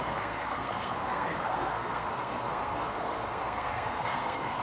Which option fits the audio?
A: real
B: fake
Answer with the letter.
B